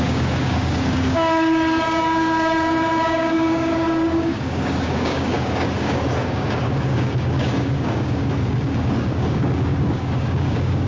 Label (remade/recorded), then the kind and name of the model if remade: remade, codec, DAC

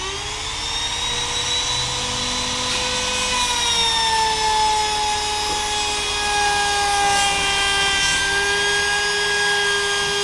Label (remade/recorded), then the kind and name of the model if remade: recorded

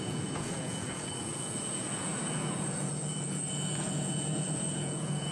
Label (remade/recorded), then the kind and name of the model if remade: remade, vocoder, Vocos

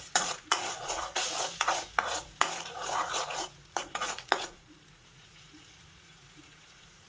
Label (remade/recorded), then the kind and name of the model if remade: remade, vocoder, Vocos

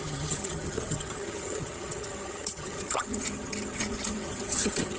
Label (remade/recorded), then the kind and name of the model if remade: remade, vocoder, HiFi-GAN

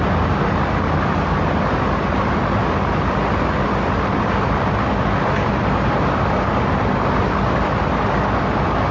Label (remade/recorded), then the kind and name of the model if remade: recorded